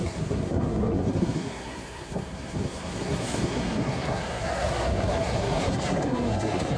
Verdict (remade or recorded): remade